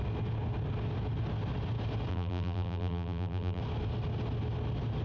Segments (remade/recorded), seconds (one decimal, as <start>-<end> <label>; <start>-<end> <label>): 0.0-2.1 recorded; 2.1-3.6 remade; 3.6-5.0 recorded